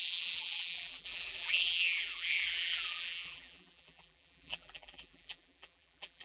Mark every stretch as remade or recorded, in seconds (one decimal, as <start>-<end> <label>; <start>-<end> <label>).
0.0-6.2 remade